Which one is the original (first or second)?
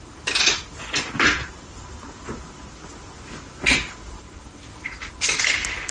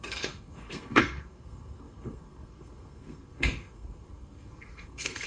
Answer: first